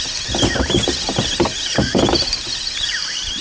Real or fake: real